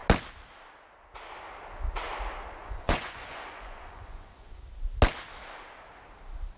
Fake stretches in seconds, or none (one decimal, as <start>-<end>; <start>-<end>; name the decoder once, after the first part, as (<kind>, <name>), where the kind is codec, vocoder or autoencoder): 2.6-4.6 (vocoder, Vocos)